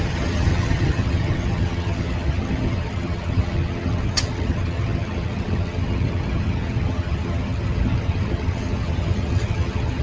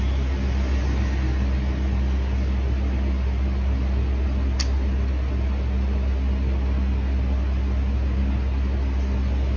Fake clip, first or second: first